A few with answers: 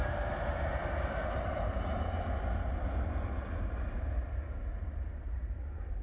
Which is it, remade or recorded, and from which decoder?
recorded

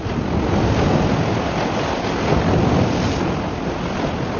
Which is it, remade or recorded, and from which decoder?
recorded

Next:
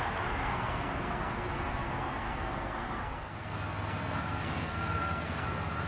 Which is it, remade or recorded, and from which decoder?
remade, codec, SNAC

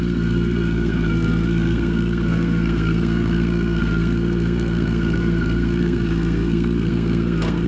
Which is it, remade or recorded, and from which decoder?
remade, codec, SNAC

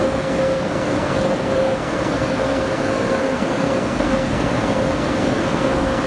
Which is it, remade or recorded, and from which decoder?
remade, codec, SNAC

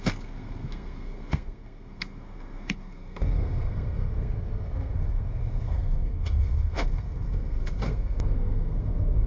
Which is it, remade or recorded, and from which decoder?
remade, codec, SNAC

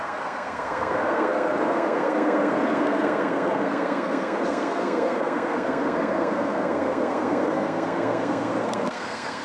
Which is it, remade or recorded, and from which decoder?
remade, codec, SNAC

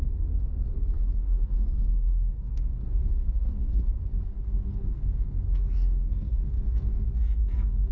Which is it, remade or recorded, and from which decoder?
remade, codec, SNAC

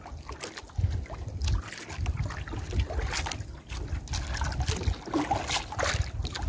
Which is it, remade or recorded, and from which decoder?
recorded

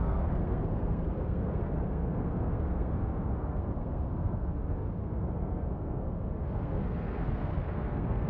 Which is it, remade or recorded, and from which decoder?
remade, codec, SNAC